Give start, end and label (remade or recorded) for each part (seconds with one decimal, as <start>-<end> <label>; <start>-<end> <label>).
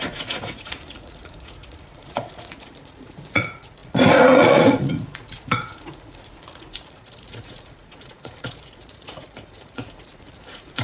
0.0-10.8 remade